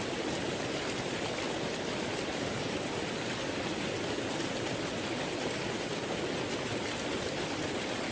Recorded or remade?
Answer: recorded